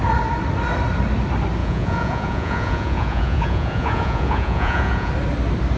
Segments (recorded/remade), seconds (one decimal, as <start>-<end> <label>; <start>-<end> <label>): 0.0-1.6 recorded; 1.6-5.1 remade; 5.1-5.8 recorded